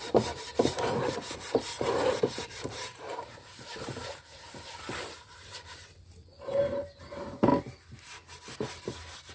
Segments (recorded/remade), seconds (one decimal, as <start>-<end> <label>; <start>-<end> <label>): 0.0-7.5 remade; 7.5-9.3 recorded